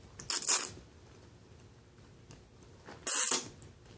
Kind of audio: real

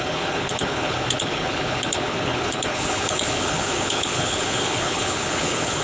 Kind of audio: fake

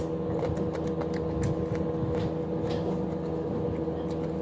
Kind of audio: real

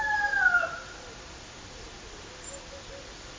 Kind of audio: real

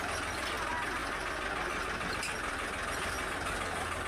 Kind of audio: real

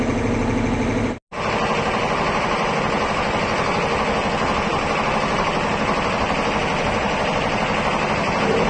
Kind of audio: real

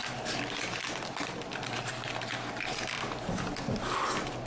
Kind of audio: real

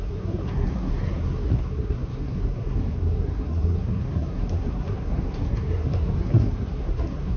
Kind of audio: fake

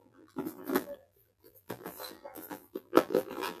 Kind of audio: fake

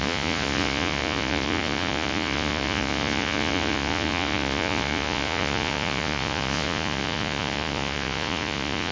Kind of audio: fake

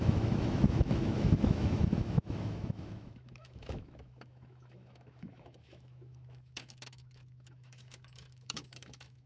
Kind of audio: fake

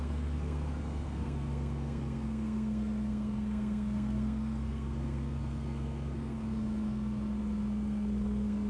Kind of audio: fake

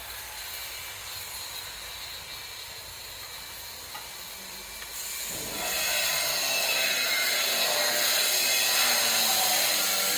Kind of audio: real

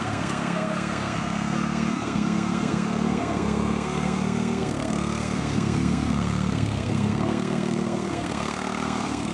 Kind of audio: fake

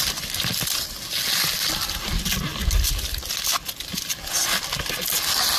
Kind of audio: real